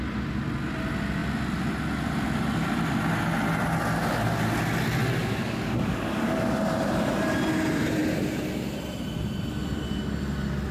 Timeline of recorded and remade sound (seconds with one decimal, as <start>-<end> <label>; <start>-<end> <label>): 0.0-5.2 recorded; 5.2-6.6 remade; 6.6-10.7 recorded